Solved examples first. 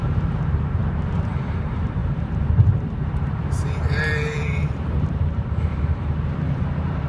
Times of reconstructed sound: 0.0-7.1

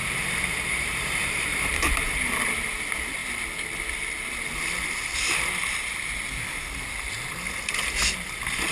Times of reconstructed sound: 0.0-2.8

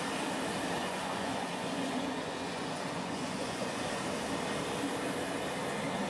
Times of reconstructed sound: 0.8-4.0